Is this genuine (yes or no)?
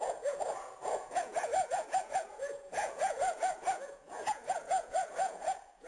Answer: no